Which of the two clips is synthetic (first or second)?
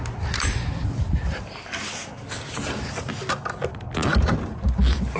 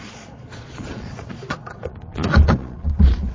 second